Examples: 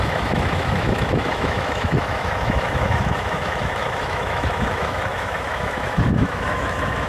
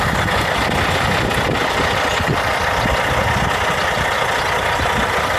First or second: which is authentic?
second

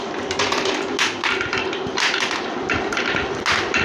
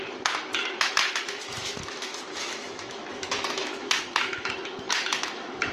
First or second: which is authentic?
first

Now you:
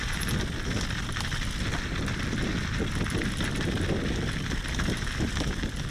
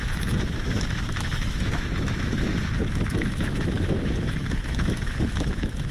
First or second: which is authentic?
first